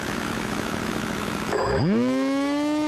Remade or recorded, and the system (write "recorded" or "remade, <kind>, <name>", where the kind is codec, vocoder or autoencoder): remade, autoencoder, DAC-VAE